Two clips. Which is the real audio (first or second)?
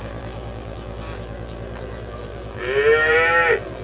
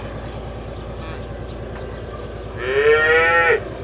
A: second